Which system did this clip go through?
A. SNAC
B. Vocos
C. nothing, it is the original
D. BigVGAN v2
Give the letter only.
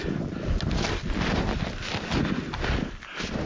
C